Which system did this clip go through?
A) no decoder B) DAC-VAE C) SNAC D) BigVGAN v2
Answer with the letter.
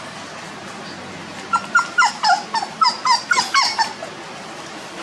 A